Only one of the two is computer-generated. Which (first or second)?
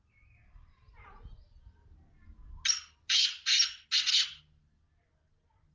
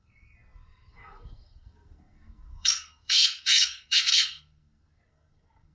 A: second